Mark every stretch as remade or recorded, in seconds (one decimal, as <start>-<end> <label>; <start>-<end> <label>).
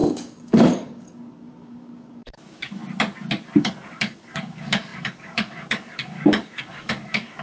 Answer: 0.0-2.8 remade; 2.8-3.6 recorded; 3.6-7.4 remade